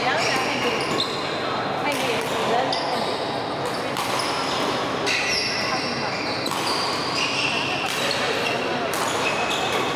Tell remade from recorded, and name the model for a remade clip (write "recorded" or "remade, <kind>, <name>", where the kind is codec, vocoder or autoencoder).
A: recorded